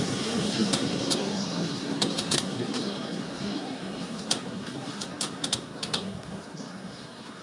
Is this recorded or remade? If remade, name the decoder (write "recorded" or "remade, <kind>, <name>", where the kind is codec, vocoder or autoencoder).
remade, codec, SNAC